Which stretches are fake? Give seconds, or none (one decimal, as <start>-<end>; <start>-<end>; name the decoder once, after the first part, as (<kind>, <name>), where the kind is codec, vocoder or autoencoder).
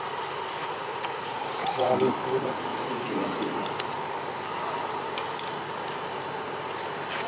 0.6-1.9 (vocoder, Vocos); 2.7-3.6